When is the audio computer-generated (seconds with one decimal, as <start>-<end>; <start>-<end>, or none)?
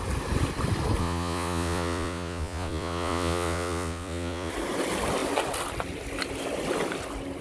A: 1.0-4.5